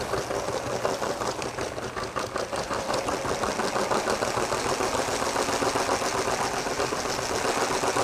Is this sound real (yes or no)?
yes